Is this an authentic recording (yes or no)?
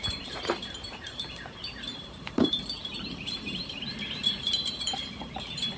no